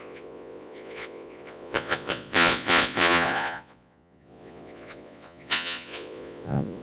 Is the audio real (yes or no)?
no